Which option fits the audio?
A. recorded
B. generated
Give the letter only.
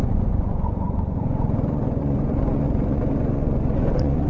B